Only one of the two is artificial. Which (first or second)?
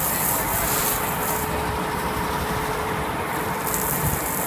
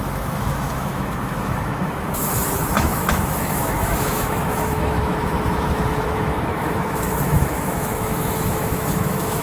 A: second